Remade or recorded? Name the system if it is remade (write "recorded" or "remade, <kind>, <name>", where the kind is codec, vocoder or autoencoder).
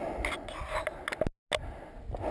recorded